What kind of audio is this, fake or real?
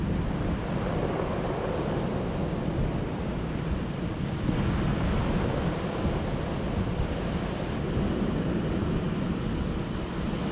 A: real